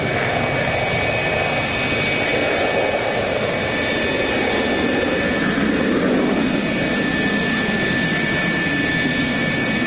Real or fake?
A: real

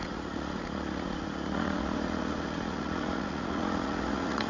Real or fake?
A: fake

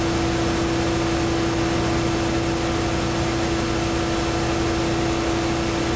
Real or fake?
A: real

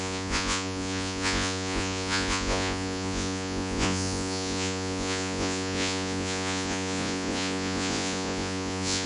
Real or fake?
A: fake